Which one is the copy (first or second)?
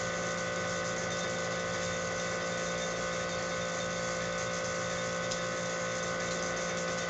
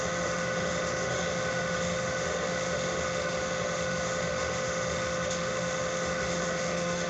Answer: second